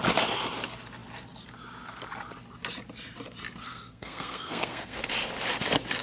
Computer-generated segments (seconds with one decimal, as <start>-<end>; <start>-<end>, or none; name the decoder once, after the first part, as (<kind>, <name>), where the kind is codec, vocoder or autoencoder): 3.6-5.0 (codec, SNAC)